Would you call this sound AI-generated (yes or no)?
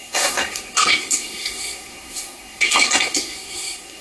yes